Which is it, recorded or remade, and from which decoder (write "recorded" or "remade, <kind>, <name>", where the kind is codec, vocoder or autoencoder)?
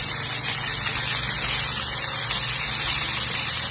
recorded